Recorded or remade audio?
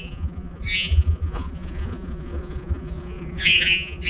remade